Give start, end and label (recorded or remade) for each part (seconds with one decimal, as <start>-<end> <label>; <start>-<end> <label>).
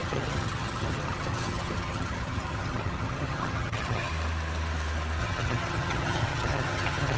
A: 0.0-4.1 remade; 4.1-5.2 recorded; 5.2-7.2 remade